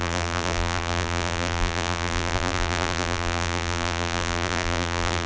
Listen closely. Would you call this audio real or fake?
fake